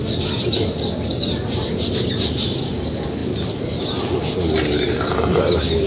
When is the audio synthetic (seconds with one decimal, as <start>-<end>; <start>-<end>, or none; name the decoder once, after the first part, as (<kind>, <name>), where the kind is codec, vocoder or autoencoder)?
none